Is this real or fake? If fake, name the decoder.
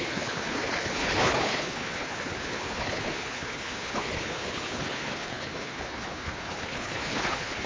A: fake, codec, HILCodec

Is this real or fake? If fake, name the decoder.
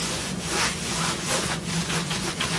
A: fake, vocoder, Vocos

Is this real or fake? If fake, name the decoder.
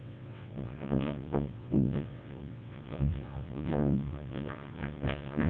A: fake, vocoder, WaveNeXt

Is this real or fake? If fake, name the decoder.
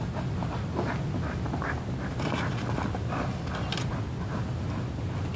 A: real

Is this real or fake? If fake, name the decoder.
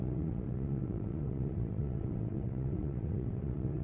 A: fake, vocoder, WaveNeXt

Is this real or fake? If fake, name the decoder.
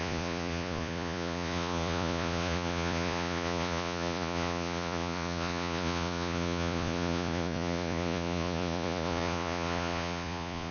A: fake, vocoder, Vocos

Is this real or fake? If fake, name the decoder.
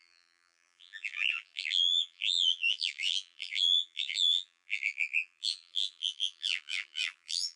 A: fake, vocoder, BigVGAN v2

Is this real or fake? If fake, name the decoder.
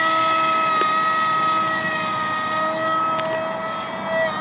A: real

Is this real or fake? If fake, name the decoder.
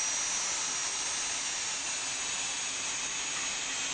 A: real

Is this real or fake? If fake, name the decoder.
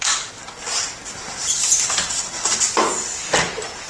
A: real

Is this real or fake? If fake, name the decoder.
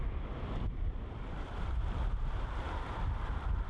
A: fake, vocoder, BigVGAN v2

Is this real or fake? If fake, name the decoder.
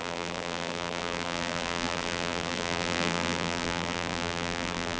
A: fake, vocoder, BigVGAN v2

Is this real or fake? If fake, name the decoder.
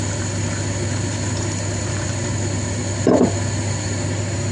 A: real